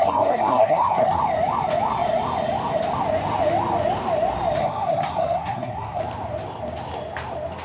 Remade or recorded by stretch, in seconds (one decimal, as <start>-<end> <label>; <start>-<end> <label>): 0.0-1.2 remade; 1.2-4.6 recorded; 4.6-6.0 remade; 6.0-7.6 recorded